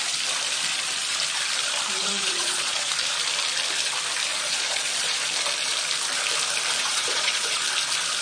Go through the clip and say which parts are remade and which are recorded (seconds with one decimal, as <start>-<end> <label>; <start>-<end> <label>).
0.0-2.0 recorded; 2.0-2.9 remade; 2.9-4.3 recorded; 4.3-5.2 remade; 5.2-6.8 recorded; 6.8-7.6 remade; 7.6-8.2 recorded